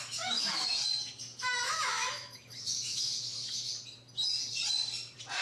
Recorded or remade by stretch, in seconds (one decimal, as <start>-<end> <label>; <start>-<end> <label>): 0.0-0.8 remade; 0.8-1.4 recorded; 1.4-3.7 remade; 3.7-5.4 recorded